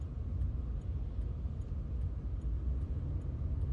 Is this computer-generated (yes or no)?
no